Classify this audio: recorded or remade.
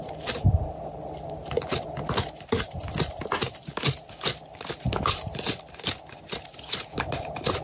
recorded